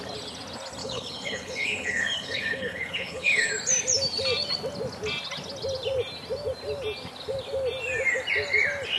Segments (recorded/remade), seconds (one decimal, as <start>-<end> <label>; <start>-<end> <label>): 0.0-0.8 recorded; 0.8-3.5 remade; 3.5-9.0 recorded